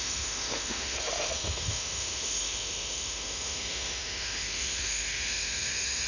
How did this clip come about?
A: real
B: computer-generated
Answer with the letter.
B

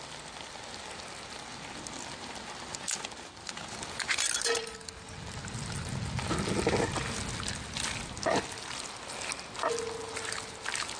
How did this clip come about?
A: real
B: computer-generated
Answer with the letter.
A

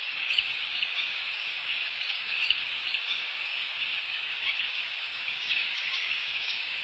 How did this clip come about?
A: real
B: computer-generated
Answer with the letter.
B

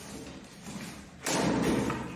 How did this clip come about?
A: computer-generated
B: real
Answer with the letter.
B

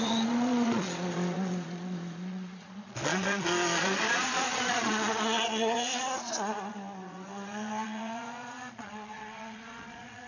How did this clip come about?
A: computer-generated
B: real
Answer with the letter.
A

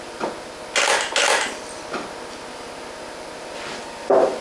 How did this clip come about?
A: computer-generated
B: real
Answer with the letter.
B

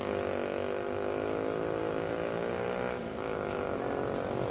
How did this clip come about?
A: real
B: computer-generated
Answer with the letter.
A